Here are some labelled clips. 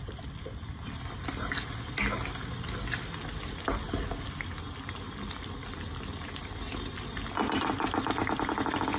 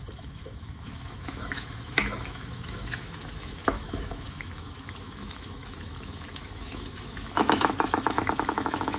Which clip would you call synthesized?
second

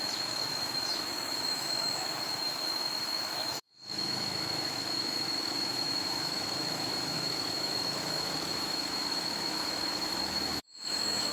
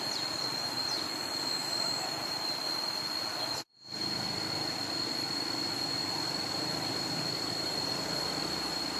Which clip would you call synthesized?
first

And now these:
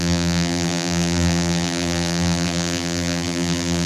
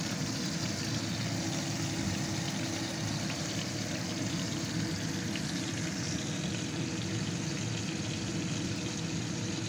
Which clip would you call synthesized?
first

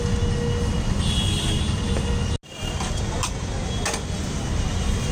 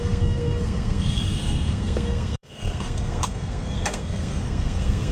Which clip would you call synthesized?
second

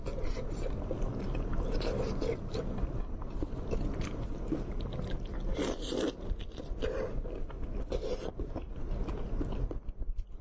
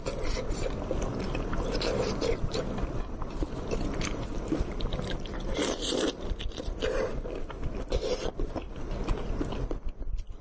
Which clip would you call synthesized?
second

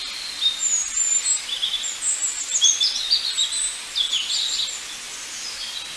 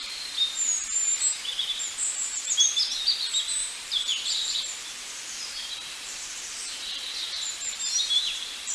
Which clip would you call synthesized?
second